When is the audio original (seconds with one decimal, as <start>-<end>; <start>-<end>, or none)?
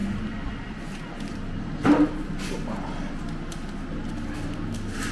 0.0-5.1